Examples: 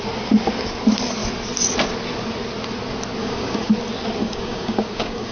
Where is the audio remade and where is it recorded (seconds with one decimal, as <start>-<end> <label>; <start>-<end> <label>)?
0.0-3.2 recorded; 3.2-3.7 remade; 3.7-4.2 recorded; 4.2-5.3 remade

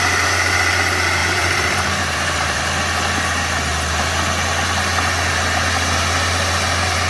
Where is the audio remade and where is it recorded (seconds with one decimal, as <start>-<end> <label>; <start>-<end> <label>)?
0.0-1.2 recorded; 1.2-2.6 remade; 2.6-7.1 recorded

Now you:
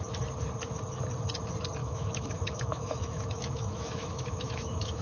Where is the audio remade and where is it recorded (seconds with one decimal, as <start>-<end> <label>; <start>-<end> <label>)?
0.0-1.8 recorded; 1.8-5.0 remade

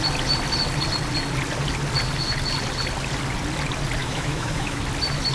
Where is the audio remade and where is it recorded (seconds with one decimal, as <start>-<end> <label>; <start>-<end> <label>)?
0.0-4.0 recorded; 4.0-4.8 remade; 4.8-5.3 recorded